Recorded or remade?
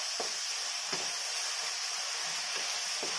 recorded